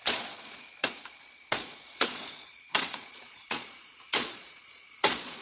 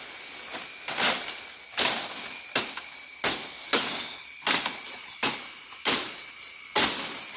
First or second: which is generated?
first